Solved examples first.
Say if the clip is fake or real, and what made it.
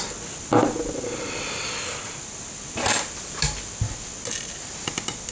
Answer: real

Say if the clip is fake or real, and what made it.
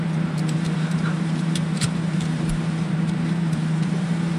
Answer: fake, vocoder, BigVGAN v2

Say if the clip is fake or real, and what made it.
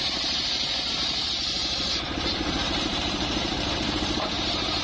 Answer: fake, vocoder, BigVGAN v2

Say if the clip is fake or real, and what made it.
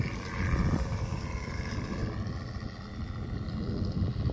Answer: fake, vocoder, BigVGAN v2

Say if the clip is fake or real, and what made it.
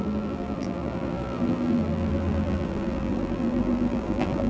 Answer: fake, vocoder, BigVGAN v2